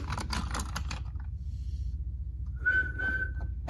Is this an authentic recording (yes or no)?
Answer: yes